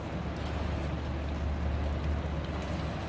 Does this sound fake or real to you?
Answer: real